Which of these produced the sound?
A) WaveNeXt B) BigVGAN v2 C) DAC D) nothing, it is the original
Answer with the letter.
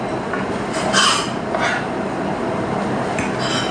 D